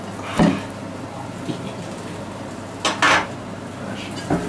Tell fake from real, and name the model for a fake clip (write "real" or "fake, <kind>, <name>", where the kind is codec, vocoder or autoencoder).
real